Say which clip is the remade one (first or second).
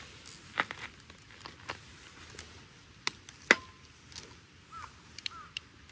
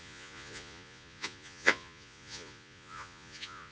second